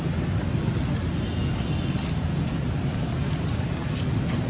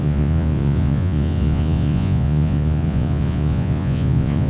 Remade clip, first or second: second